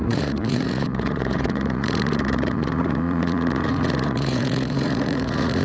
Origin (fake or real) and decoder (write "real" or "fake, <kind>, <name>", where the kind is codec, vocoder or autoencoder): fake, vocoder, Vocos